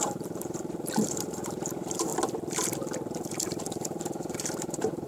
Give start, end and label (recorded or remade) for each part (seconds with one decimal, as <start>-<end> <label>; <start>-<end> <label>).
0.0-2.1 remade; 2.1-3.3 recorded; 3.3-5.1 remade